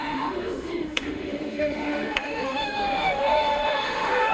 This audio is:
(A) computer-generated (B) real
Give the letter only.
A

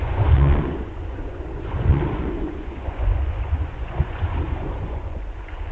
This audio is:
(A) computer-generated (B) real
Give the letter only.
A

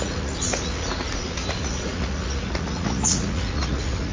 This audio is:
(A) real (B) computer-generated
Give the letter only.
B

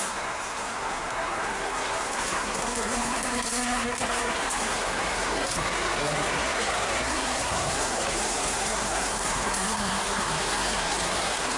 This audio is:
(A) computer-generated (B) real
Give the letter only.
A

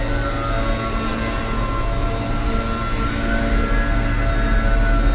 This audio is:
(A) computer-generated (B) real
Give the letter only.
B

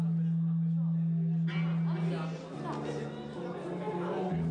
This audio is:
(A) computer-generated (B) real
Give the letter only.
B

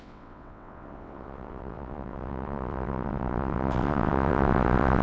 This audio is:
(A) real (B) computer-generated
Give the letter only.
B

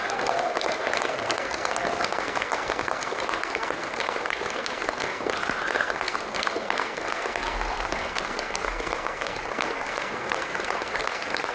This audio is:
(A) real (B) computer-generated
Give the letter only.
B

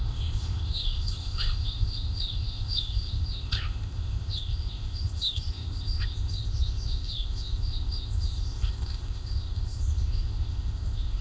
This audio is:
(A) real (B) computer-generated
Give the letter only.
B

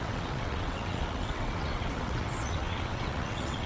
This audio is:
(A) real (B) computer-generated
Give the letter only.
B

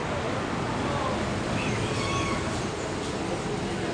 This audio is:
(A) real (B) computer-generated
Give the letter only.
A